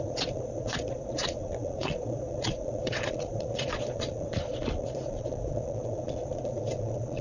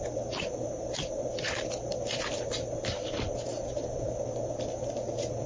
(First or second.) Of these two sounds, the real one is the second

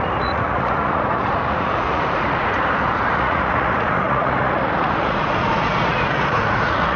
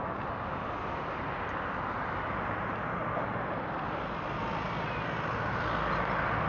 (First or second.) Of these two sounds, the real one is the second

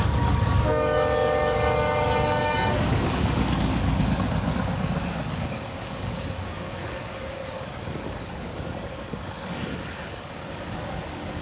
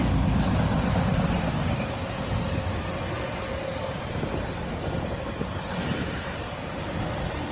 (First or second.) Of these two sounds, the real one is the second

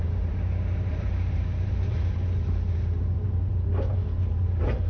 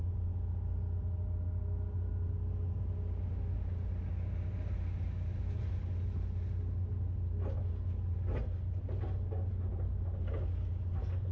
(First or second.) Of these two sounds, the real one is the second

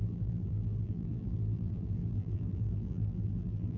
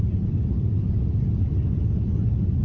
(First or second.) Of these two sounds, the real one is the second